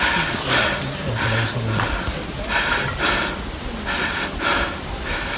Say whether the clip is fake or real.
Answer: real